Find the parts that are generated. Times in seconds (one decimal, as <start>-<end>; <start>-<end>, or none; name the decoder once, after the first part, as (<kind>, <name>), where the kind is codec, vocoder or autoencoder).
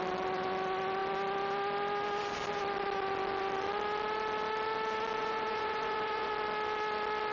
5.2-6.3 (vocoder, Vocos)